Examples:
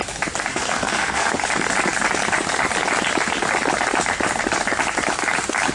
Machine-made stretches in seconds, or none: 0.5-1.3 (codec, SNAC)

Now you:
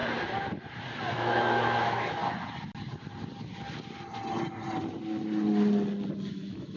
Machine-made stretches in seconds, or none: 1.1-2.2 (autoencoder, DAC-VAE); 6.3-6.8

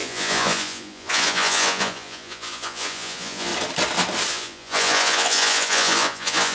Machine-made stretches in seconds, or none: 0.0-3.5 (vocoder, Vocos); 4.3-6.5

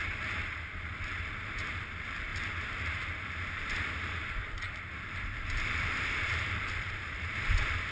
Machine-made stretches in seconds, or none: 0.0-2.3 (vocoder, BigVGAN v2); 2.8-7.9